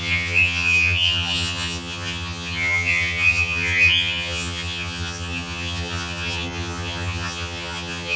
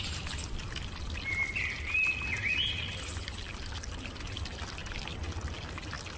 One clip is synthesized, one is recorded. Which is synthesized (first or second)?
first